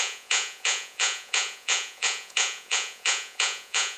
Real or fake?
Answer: fake